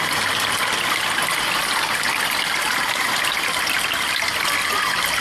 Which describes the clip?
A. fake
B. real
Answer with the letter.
B